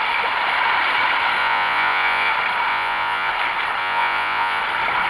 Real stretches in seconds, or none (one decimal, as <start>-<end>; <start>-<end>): 0.0-1.4; 2.3-2.7; 3.3-3.8; 4.6-5.1

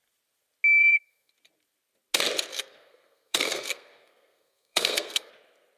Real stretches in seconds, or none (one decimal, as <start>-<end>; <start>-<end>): 0.0-0.8; 1.3-2.5; 5.3-5.8

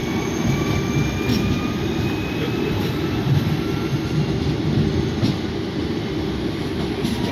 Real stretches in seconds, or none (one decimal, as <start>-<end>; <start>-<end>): 0.7-1.3; 3.4-7.3

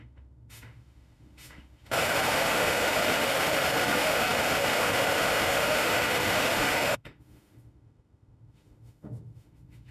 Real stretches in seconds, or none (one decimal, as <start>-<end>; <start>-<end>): none

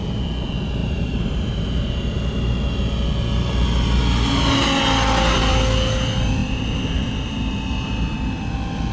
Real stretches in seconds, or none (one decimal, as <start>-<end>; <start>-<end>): 0.0-0.8; 1.9-8.9

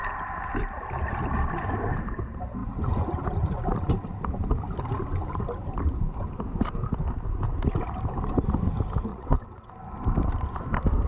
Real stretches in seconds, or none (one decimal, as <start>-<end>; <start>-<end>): 0.0-9.1; 9.7-11.1

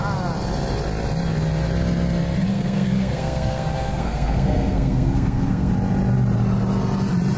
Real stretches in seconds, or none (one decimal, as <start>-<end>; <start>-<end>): 0.0-2.5; 5.7-7.4

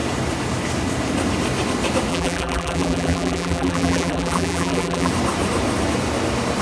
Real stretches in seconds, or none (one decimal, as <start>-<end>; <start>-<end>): 0.0-2.1; 5.1-6.6